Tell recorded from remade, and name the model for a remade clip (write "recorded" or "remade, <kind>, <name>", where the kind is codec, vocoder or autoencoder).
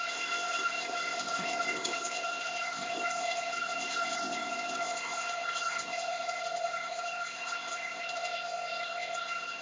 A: remade, codec, ZipCodec